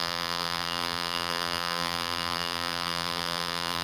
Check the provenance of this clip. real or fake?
fake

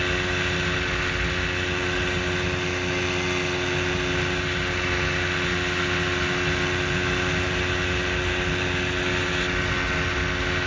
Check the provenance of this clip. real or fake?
real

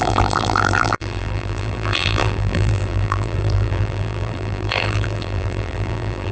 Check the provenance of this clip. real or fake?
fake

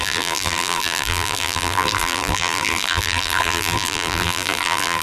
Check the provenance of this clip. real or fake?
fake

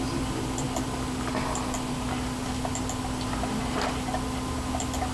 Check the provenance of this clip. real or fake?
real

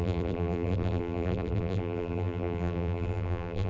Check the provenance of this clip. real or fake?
fake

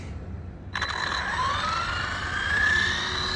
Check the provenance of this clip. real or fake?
real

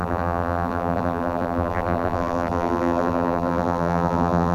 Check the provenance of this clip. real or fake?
fake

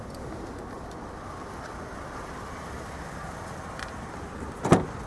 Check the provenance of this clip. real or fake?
real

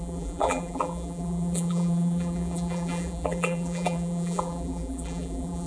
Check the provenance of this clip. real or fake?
fake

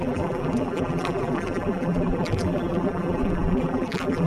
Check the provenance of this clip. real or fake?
fake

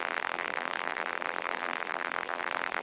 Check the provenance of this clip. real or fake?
fake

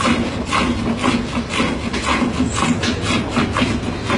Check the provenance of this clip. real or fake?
real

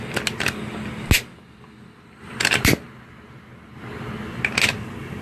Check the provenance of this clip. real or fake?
real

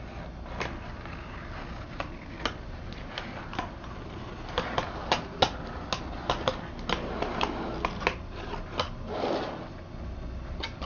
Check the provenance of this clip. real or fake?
real